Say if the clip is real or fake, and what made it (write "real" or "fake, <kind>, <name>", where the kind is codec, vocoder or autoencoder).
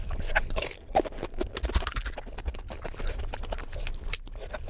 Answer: real